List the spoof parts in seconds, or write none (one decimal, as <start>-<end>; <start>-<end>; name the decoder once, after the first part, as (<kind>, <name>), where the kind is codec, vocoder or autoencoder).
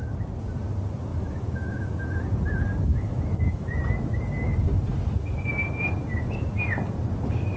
1.1-1.9 (autoencoder, DAC-VAE); 2.9-3.7